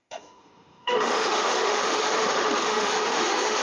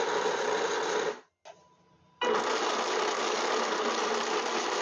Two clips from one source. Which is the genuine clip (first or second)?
second